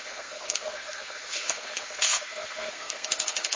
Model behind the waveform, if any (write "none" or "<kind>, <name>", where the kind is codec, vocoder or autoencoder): codec, SNAC